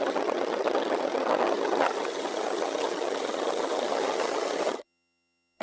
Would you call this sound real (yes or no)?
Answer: no